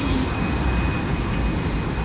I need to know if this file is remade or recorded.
recorded